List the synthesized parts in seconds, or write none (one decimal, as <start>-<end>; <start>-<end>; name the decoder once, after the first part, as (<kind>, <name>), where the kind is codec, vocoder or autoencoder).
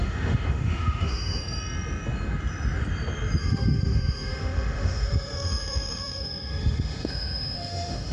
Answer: 0.0-1.4 (autoencoder, DAC-VAE); 3.4-8.1